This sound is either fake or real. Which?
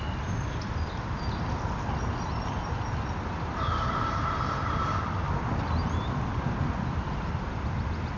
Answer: real